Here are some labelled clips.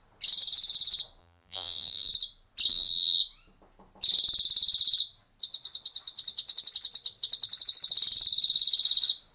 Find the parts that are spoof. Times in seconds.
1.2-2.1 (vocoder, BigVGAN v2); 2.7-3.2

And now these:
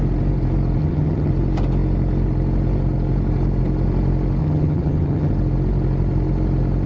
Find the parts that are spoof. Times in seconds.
0.8-1.3 (vocoder, HiFi-GAN); 4.4-5.3

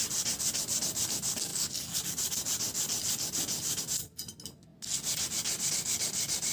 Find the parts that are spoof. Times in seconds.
none

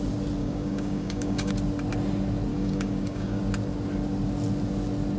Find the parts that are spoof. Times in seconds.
0.4-1.5 (codec, DAC); 2.5-3.4

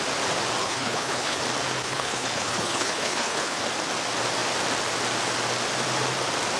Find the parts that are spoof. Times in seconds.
0.6-1.4 (codec, HILCodec); 1.8-3.6